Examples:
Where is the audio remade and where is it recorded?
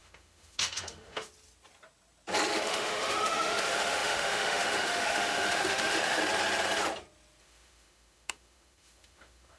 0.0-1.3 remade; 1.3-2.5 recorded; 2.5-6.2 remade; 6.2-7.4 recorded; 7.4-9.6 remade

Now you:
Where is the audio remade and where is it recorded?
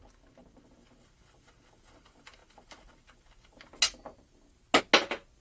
0.0-5.4 recorded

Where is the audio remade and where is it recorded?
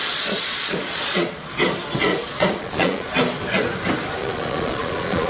0.0-1.5 remade; 1.5-2.1 recorded; 2.1-3.1 remade; 3.1-4.2 recorded; 4.2-5.3 remade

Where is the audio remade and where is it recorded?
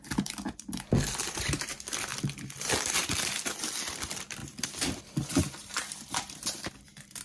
0.0-4.4 remade; 4.4-5.0 recorded; 5.0-7.2 remade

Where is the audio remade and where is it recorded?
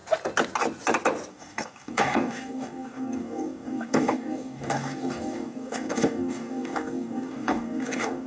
0.0-1.3 recorded; 1.3-8.3 remade